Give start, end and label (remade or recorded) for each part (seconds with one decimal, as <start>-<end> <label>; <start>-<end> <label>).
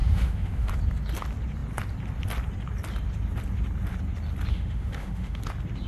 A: 0.0-0.7 remade; 0.7-4.5 recorded; 4.5-5.4 remade; 5.4-5.9 recorded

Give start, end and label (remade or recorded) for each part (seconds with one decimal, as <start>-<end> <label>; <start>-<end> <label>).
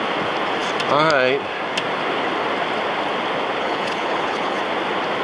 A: 0.0-3.6 recorded; 3.6-4.6 remade; 4.6-5.2 recorded